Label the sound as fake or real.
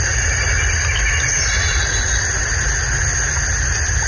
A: real